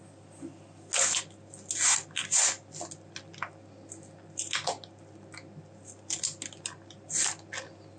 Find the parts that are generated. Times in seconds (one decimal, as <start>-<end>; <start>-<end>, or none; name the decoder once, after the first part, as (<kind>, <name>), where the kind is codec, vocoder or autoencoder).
none